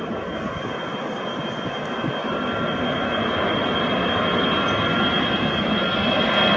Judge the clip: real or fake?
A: real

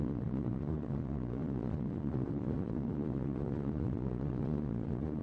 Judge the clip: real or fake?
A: fake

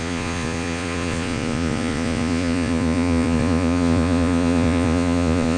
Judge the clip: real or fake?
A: fake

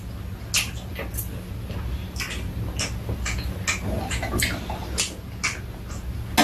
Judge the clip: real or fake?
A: real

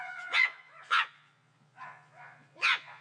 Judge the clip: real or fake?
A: fake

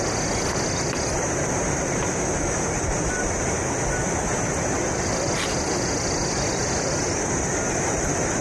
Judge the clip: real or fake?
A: real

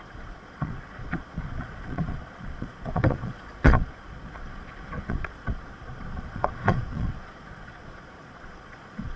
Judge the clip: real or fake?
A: fake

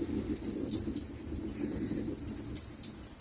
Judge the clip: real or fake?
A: real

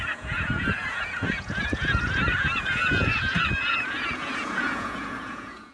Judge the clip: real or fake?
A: fake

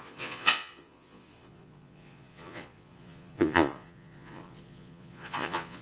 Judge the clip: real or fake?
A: fake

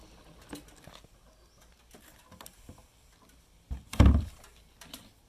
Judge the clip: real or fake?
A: real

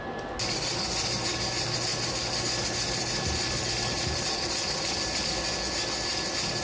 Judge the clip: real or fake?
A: real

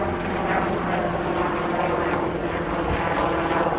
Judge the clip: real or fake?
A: real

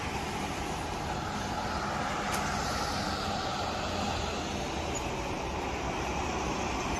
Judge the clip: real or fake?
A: real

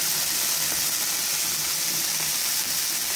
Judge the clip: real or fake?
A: real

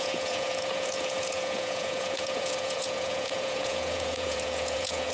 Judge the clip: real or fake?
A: fake